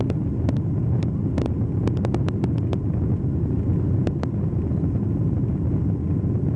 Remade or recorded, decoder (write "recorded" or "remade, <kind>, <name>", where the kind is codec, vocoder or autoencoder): recorded